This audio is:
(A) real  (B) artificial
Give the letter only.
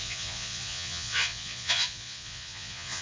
B